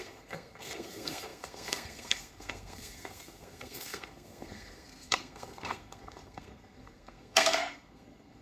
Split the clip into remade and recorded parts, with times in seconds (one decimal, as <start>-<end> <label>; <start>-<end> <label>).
0.0-8.4 remade